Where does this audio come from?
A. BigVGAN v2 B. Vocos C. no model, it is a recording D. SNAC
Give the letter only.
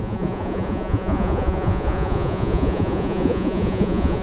B